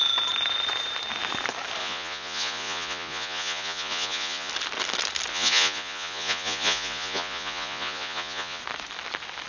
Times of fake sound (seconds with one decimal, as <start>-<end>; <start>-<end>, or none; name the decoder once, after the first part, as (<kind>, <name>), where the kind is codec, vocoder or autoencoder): 1.8-4.5 (vocoder, Vocos); 5.3-8.6